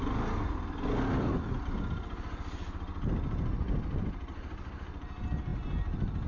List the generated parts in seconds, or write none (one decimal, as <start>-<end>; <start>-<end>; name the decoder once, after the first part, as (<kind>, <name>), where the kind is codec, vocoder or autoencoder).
none